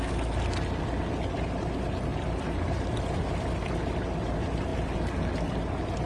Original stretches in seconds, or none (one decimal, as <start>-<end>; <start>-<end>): 0.0-6.1